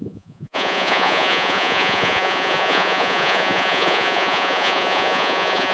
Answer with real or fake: fake